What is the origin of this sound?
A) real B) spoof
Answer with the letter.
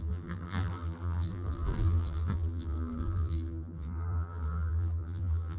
B